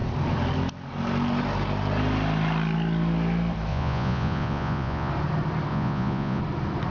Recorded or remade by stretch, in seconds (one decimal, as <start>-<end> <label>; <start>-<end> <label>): 0.0-3.7 recorded; 3.7-5.1 remade; 5.1-5.7 recorded; 5.7-6.4 remade; 6.4-6.9 recorded